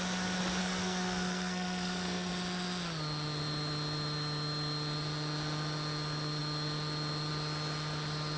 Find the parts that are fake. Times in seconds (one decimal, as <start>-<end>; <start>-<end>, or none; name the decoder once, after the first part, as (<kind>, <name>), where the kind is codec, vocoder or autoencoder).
0.6-2.3 (codec, SNAC)